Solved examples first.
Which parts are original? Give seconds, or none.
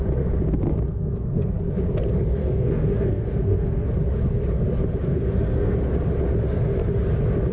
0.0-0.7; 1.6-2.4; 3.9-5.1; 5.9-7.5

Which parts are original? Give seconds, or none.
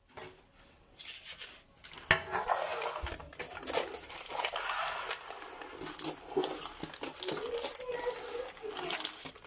0.0-9.5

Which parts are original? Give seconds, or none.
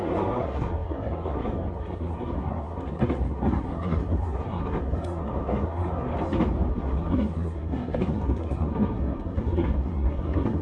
6.1-6.7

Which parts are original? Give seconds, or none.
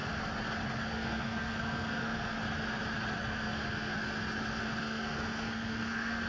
0.0-0.8; 2.4-3.2; 3.9-4.8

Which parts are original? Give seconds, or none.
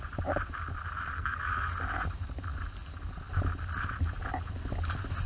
0.0-1.1; 1.7-5.3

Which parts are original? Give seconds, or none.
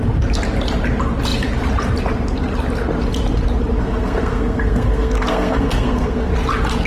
0.0-3.8; 6.3-6.9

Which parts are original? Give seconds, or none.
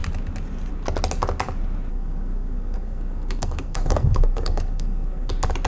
0.0-1.9; 5.3-5.7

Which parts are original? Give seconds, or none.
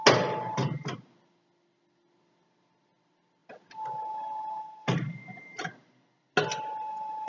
0.0-7.3